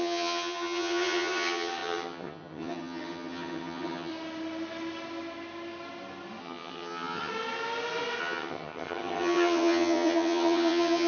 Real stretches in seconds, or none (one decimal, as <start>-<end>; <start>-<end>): 4.1-6.4; 7.3-8.2